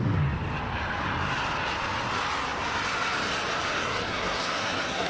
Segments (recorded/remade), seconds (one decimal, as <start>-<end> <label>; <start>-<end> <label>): 0.0-3.8 recorded; 3.8-5.1 remade